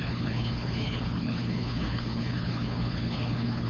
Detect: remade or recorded remade